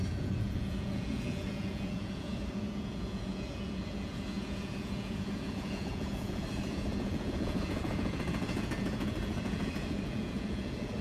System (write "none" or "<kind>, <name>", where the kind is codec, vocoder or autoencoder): vocoder, Vocos